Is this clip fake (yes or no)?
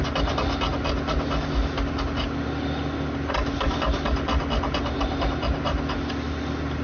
no